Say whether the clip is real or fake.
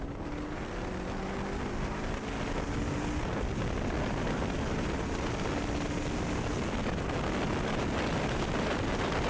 real